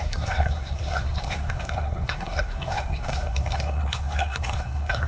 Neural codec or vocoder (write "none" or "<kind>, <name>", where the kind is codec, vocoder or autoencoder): codec, SNAC